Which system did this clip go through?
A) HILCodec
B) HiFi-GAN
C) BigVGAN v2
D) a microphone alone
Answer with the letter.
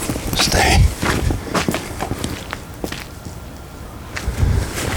D